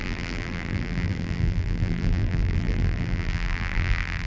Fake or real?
fake